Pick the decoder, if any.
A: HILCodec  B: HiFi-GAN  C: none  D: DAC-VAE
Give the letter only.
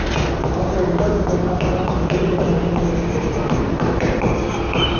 C